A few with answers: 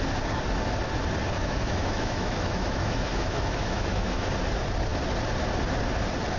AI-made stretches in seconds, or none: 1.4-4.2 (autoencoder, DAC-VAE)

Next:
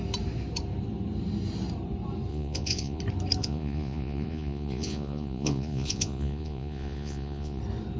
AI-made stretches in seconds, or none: 2.3-3.0 (vocoder, Vocos); 3.4-7.6

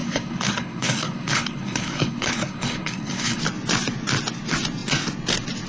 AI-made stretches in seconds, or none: 0.0-3.4 (codec, HILCodec)

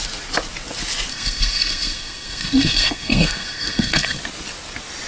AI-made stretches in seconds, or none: 1.1-4.2 (codec, SNAC)